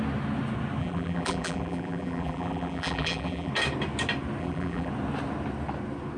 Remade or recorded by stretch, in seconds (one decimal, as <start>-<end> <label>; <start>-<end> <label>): 0.0-0.8 recorded; 0.8-3.5 remade; 3.5-4.4 recorded; 4.4-4.9 remade; 4.9-6.2 recorded